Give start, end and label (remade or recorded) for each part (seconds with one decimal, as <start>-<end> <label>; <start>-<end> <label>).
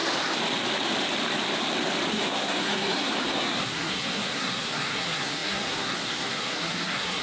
0.0-2.1 recorded; 2.1-7.2 remade